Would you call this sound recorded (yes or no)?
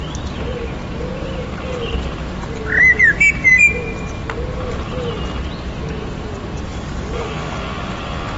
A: yes